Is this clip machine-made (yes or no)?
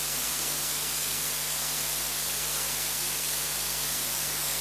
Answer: yes